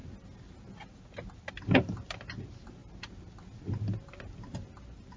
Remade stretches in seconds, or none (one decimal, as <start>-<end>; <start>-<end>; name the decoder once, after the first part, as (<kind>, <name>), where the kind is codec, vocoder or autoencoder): none